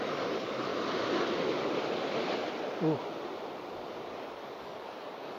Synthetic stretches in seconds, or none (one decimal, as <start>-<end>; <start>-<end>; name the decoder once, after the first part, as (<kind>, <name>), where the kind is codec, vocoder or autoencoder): 0.0-0.7 (codec, DAC); 3.9-5.4